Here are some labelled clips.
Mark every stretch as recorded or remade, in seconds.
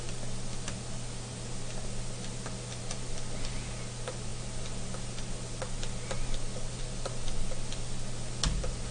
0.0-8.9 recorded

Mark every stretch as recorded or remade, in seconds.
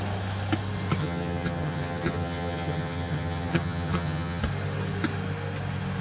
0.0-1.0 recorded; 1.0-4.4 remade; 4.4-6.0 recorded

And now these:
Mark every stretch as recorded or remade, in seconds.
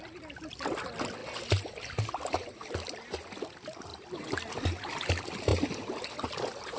0.0-6.8 recorded